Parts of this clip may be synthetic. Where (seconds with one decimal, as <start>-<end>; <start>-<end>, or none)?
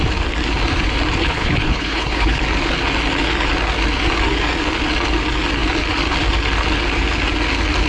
1.2-2.4